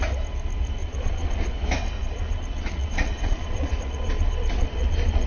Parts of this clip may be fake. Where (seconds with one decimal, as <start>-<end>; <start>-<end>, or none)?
0.8-1.5; 2.0-5.3